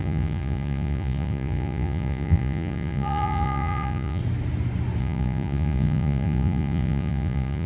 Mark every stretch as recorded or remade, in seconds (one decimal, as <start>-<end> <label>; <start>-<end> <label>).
0.0-4.2 remade; 4.2-5.0 recorded; 5.0-7.7 remade